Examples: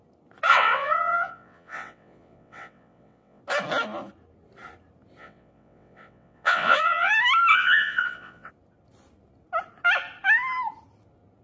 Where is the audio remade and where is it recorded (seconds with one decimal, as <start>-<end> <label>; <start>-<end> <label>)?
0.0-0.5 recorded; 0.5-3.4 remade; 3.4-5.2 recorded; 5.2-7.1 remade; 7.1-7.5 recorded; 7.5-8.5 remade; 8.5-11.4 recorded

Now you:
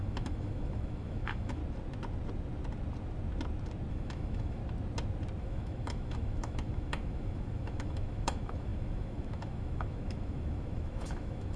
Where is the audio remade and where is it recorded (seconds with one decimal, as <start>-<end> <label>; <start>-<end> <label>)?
0.0-1.6 remade; 1.6-3.9 recorded; 3.9-4.6 remade; 4.6-5.4 recorded; 5.4-11.6 remade

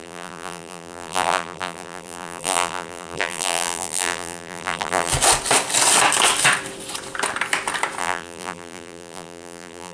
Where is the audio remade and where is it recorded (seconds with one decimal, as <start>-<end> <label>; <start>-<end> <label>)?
0.0-5.1 remade; 5.1-8.0 recorded; 8.0-9.9 remade

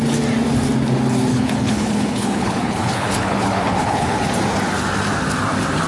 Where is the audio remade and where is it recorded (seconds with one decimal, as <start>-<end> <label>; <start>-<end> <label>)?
0.0-1.3 recorded; 1.3-4.2 remade; 4.2-5.9 recorded

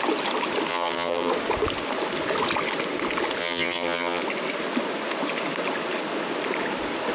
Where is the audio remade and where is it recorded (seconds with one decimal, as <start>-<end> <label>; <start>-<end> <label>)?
0.0-0.7 recorded; 0.7-1.3 remade; 1.3-3.4 recorded; 3.4-4.2 remade; 4.2-7.1 recorded

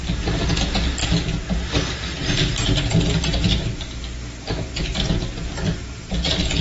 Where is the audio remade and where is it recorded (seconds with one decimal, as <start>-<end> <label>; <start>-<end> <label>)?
0.0-6.6 recorded